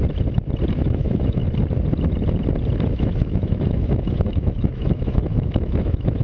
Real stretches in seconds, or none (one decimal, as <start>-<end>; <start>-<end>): 0.0-0.7; 1.4-2.9